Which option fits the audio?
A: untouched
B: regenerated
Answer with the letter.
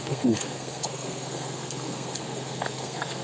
B